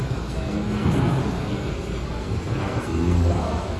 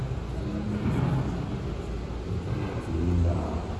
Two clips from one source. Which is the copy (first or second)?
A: first